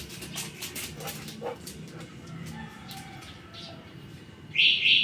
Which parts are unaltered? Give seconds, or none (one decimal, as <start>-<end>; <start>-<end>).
0.0-5.0